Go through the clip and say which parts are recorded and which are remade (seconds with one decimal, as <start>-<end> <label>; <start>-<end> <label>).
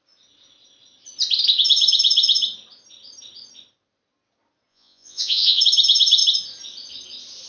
0.0-4.7 recorded; 4.7-5.6 remade; 5.6-7.5 recorded